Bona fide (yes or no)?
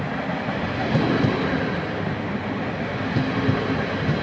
yes